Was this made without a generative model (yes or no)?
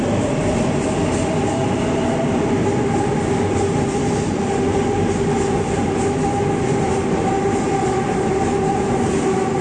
yes